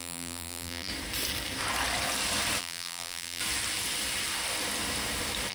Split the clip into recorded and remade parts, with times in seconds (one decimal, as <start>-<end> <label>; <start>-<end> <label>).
0.0-0.9 remade; 0.9-2.6 recorded; 2.6-3.4 remade; 3.4-5.5 recorded